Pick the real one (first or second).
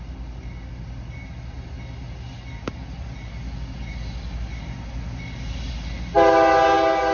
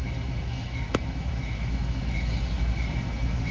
first